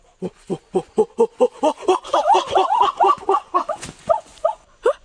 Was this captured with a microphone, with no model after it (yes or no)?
no